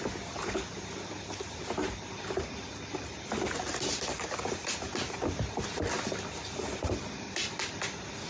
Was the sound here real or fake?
real